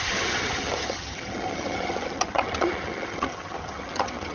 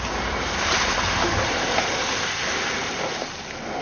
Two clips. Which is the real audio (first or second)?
second